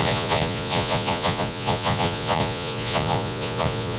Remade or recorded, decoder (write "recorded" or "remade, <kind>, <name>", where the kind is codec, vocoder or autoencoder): remade, vocoder, Vocos